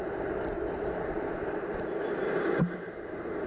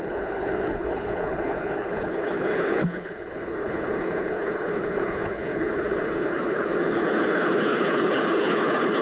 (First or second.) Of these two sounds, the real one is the first